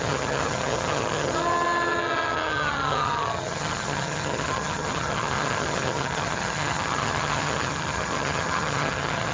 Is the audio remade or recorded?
remade